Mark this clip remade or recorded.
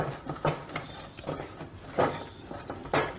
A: remade